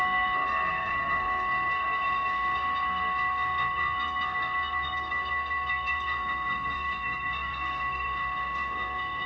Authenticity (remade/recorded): remade